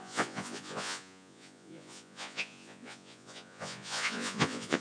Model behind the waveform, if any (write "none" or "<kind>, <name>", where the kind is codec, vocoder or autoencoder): vocoder, Vocos